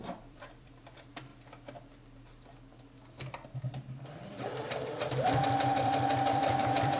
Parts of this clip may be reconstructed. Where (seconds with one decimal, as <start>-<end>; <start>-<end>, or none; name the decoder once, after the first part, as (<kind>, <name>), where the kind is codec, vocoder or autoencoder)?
0.0-1.3 (vocoder, BigVGAN v2); 3.6-7.0